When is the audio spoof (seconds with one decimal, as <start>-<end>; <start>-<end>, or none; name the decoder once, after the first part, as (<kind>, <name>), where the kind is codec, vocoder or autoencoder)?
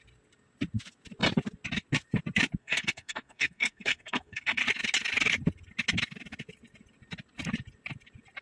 2.6-4.6 (codec, SNAC)